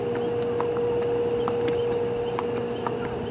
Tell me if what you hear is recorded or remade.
recorded